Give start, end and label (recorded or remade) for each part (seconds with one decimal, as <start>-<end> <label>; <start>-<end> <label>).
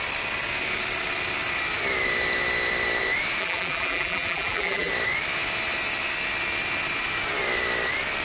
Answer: 0.0-3.4 recorded; 3.4-4.9 remade; 4.9-8.2 recorded